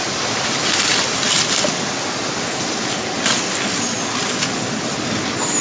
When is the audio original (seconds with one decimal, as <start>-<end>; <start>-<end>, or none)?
0.0-5.6